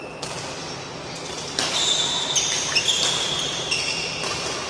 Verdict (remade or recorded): recorded